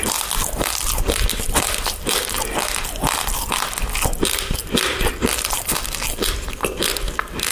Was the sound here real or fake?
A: real